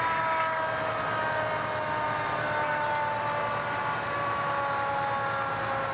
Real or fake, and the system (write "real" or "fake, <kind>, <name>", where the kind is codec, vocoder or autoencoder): real